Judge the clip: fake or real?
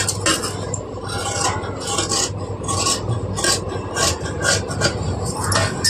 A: real